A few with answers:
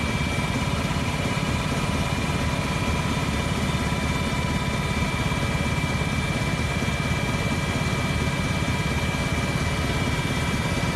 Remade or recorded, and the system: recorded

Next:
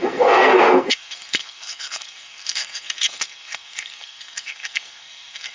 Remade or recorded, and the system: remade, codec, SNAC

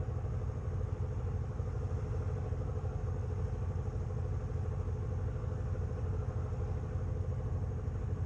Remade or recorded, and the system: recorded